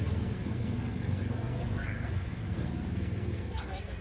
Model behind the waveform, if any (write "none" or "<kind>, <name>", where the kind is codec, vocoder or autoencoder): codec, SNAC